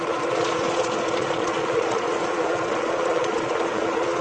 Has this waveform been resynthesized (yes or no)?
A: yes